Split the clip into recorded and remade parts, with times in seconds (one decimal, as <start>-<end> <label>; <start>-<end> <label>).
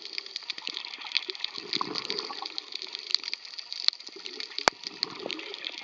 0.0-5.8 recorded